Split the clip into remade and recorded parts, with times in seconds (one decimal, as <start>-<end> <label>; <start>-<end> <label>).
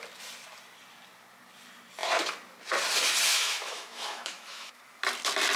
0.0-3.3 recorded; 3.3-4.8 remade; 4.8-5.6 recorded